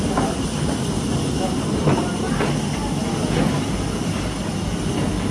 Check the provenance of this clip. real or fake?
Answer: real